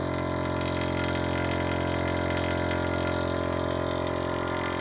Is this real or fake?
real